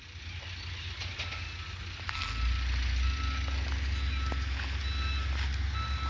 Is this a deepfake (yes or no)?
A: no